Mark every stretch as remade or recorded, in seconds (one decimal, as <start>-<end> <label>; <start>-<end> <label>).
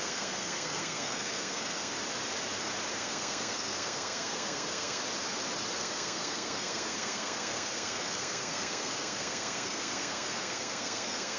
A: 0.0-1.9 remade; 1.9-2.9 recorded; 2.9-5.0 remade; 5.0-5.8 recorded; 5.8-11.4 remade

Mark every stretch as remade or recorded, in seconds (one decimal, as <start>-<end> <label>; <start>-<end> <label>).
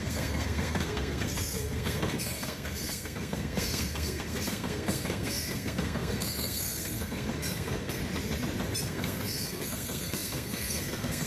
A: 0.0-8.0 remade; 8.0-8.8 recorded; 8.8-11.3 remade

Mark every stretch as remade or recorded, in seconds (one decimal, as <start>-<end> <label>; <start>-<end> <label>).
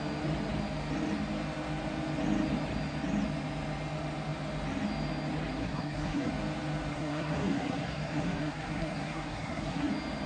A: 0.0-5.6 recorded; 5.6-6.3 remade; 6.3-6.9 recorded; 6.9-9.9 remade; 9.9-10.3 recorded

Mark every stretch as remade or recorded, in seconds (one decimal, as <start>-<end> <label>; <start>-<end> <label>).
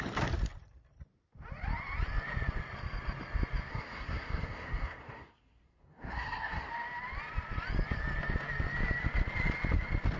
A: 0.0-3.7 recorded; 3.7-6.7 remade; 6.7-10.2 recorded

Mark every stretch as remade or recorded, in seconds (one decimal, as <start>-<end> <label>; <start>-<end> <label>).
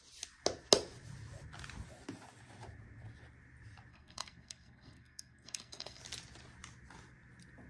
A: 0.0-3.9 recorded; 3.9-6.0 remade; 6.0-7.7 recorded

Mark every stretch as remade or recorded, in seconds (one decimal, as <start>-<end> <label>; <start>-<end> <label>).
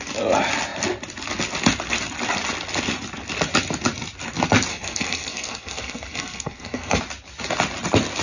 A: 0.0-4.7 recorded; 4.7-7.0 remade; 7.0-8.2 recorded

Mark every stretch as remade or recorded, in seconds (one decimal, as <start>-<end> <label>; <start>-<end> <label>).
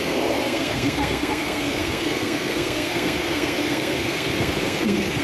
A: 0.0-5.2 remade